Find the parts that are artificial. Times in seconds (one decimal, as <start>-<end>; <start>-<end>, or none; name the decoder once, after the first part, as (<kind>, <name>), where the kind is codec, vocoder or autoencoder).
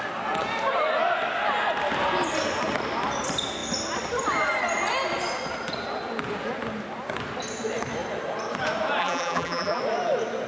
9.0-9.8 (vocoder, BigVGAN v2)